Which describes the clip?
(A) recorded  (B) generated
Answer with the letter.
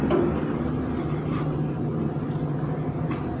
A